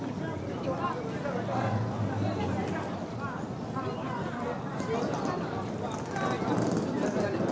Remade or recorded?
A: recorded